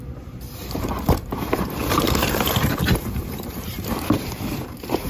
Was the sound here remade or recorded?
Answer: remade